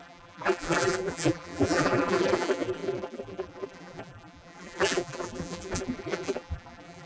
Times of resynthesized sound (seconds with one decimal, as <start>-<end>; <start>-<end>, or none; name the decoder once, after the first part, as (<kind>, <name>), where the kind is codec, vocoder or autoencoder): 0.0-7.1 (vocoder, BigVGAN v2)